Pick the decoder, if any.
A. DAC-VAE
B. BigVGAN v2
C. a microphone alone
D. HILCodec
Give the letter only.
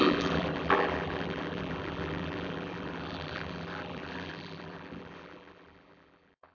B